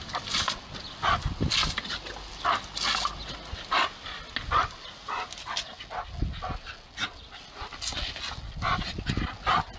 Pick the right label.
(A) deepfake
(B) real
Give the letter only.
B